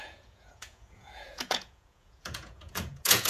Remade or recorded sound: remade